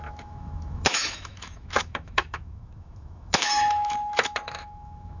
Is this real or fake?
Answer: fake